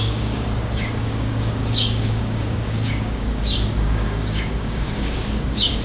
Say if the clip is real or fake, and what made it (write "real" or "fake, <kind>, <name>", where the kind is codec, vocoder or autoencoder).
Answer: fake, codec, DAC